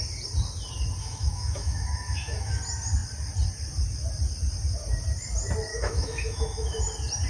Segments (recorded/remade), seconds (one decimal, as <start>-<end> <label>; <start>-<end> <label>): 0.0-1.0 recorded; 1.0-2.6 remade; 2.6-5.7 recorded; 5.7-6.8 remade; 6.8-7.3 recorded